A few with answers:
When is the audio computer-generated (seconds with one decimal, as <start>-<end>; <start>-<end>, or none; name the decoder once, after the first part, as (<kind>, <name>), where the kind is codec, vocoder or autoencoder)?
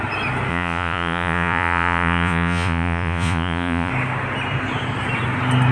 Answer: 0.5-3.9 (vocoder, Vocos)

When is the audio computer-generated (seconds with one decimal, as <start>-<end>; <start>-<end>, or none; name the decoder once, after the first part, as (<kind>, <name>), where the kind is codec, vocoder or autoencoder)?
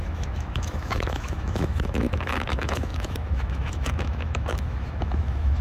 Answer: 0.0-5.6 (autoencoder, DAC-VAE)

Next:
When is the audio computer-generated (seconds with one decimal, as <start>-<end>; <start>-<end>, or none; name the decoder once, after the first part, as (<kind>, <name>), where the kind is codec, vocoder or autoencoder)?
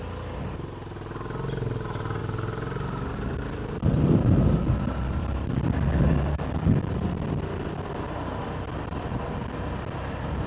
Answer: none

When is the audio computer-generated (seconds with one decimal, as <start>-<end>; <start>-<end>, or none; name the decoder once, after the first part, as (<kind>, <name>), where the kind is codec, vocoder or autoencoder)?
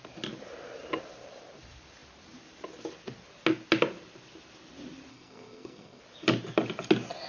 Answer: 5.1-6.0 (codec, SNAC)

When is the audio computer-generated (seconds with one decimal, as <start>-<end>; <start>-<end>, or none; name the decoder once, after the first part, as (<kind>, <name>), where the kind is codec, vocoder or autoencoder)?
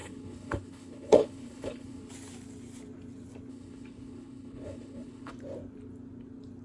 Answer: 0.0-2.1 (codec, HILCodec); 3.5-5.3